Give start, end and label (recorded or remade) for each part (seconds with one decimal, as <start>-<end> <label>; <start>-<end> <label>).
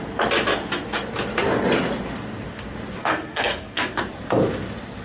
0.0-3.0 recorded; 3.0-4.0 remade; 4.0-5.0 recorded